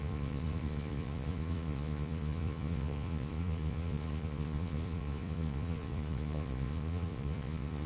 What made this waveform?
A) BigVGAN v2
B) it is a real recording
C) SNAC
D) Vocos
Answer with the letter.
D